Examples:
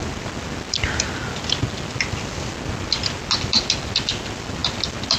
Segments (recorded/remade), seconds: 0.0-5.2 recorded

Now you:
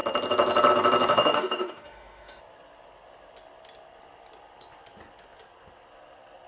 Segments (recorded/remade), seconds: 0.0-1.1 recorded; 1.1-2.4 remade; 2.4-6.5 recorded

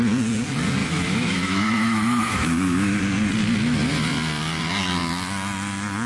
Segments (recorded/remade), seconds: 0.0-0.8 recorded; 0.8-3.0 remade; 3.0-6.1 recorded